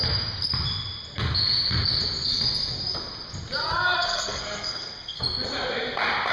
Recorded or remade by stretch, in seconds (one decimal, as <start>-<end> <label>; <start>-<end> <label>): 0.0-3.6 recorded; 3.6-5.2 remade; 5.2-6.3 recorded